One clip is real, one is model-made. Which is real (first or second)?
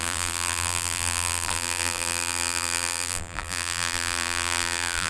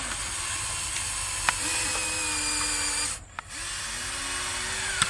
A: second